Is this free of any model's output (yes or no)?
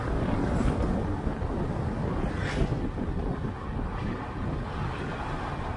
yes